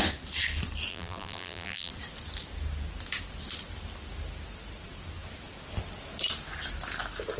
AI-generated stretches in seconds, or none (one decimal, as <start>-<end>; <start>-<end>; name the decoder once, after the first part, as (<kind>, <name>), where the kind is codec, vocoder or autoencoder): 0.9-1.9 (vocoder, BigVGAN v2)